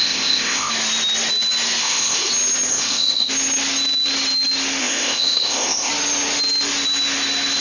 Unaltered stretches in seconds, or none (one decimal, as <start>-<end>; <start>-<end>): 0.7-1.8; 2.3-2.7; 3.3-4.8; 5.9-7.6